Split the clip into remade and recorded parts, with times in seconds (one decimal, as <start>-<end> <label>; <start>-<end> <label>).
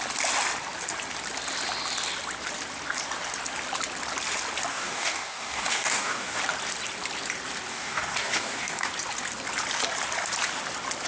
0.0-4.7 recorded; 4.7-6.4 remade; 6.4-7.7 recorded; 7.7-8.9 remade; 8.9-11.1 recorded